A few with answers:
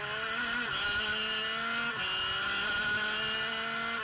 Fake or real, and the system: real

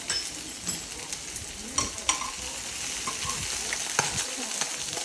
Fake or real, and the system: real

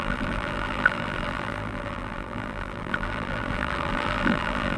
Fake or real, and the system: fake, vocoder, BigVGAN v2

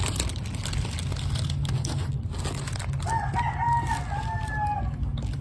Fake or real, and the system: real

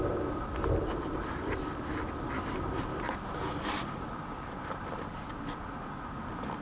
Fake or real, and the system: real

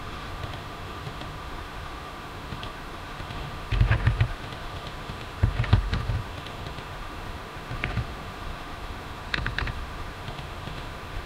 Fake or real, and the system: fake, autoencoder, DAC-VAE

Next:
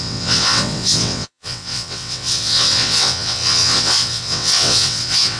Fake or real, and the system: fake, vocoder, WaveNeXt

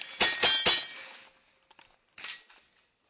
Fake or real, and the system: real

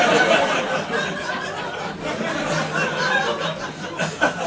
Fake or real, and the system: real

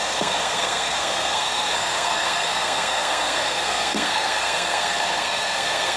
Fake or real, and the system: fake, codec, SNAC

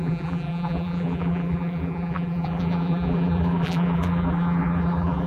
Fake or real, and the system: fake, vocoder, BigVGAN v2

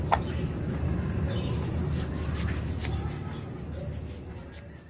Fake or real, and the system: real